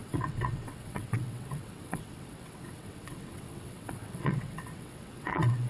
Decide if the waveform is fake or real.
fake